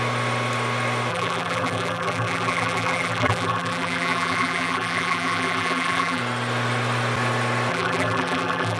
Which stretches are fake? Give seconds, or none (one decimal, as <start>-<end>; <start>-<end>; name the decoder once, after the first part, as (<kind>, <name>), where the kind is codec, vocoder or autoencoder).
1.1-6.2 (vocoder, BigVGAN v2); 7.7-8.8